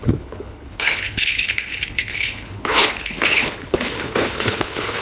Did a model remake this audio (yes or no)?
yes